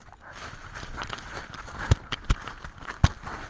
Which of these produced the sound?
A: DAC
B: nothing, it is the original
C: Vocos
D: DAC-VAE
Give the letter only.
B